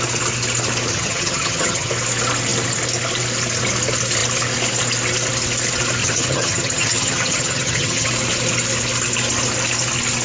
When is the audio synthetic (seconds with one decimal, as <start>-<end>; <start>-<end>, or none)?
0.9-1.9; 6.0-8.1